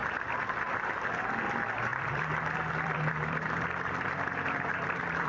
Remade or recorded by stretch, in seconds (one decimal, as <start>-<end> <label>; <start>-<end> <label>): 0.0-1.9 recorded; 1.9-5.3 remade